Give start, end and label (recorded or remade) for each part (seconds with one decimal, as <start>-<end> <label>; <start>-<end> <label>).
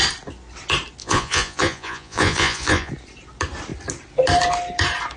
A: 0.0-1.0 recorded; 1.0-2.9 remade; 2.9-5.2 recorded